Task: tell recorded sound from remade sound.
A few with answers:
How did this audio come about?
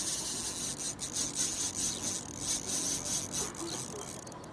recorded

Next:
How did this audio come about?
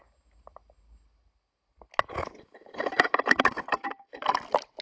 recorded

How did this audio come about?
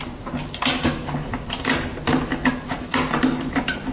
recorded